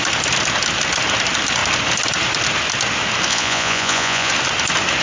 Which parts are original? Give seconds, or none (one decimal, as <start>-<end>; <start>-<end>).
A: 0.0-3.3; 4.3-5.0